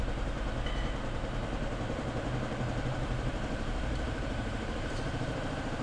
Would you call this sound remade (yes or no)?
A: yes